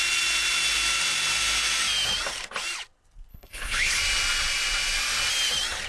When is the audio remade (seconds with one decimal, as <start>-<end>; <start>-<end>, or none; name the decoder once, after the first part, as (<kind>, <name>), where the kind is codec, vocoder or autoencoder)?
3.3-4.0 (codec, HILCodec)